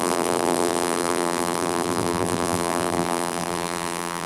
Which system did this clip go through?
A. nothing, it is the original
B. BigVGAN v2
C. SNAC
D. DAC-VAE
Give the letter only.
B